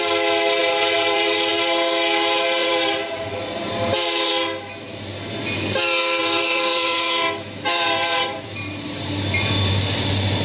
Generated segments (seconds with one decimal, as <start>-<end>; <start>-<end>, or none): 0.6-1.5; 2.6-4.3; 6.2-9.8